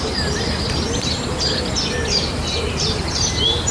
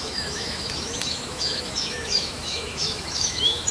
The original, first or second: first